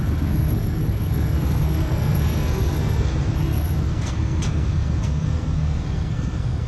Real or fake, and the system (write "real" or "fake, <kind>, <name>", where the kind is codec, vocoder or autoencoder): fake, codec, SNAC